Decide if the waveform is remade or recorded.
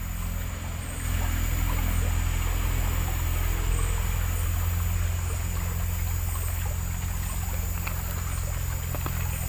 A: recorded